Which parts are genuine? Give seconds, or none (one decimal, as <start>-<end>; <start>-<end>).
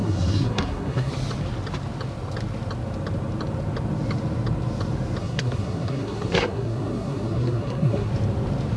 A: 1.1-5.2; 8.1-8.8